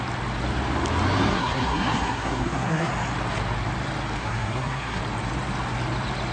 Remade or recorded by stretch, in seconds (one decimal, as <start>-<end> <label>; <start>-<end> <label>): 0.0-1.3 recorded; 1.3-2.9 remade; 2.9-4.2 recorded; 4.2-5.0 remade; 5.0-6.3 recorded